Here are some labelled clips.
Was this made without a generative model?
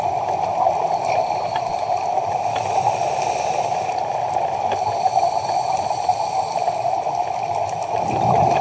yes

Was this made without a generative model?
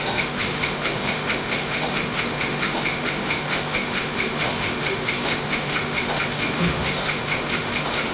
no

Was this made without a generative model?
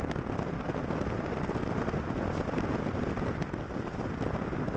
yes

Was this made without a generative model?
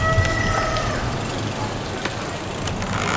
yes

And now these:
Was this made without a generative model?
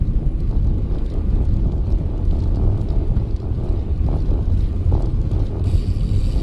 yes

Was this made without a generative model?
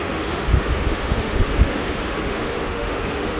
no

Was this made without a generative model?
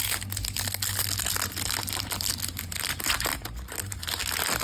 yes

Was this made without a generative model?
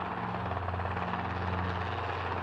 yes